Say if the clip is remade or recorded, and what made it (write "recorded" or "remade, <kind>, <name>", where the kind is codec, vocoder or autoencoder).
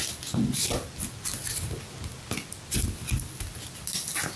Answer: recorded